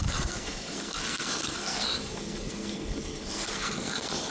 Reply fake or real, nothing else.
fake